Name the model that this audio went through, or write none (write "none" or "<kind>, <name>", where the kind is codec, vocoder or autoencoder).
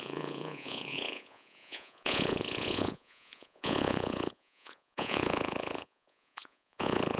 vocoder, Vocos